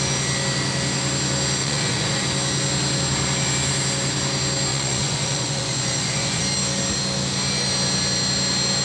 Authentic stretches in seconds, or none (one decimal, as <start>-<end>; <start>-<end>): 0.0-1.6; 2.2-4.7; 6.4-8.8